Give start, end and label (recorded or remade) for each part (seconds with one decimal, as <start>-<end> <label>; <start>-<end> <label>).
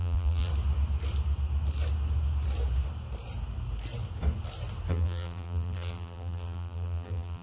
0.0-0.5 remade; 0.5-4.9 recorded; 4.9-7.4 remade